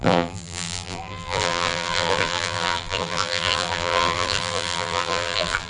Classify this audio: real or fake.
fake